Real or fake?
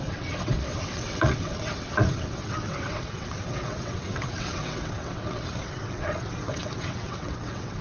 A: fake